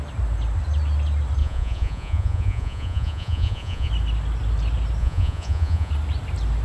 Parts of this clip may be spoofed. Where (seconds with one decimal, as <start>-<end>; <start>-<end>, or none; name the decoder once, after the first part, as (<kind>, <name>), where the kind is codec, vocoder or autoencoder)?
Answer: 1.4-3.9 (vocoder, Vocos); 5.0-5.9